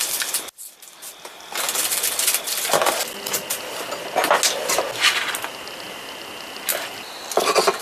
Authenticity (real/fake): real